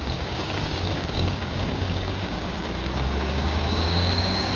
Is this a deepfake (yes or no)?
yes